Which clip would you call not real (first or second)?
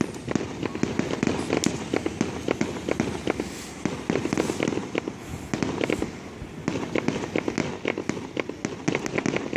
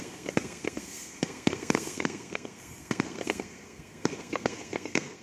second